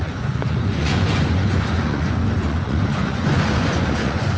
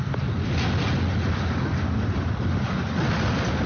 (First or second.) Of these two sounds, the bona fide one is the second